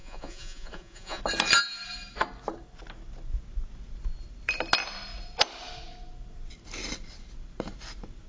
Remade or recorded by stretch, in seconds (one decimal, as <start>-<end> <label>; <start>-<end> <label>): 0.0-1.2 remade; 1.2-8.3 recorded